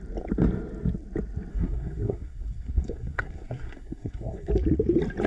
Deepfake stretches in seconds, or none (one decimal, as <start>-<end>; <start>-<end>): 1.5-4.5